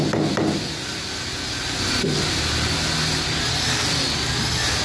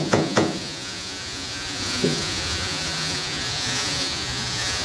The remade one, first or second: second